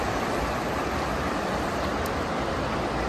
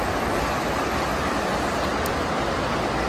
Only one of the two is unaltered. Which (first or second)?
second